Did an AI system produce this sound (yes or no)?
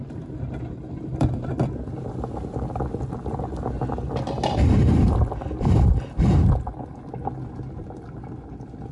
no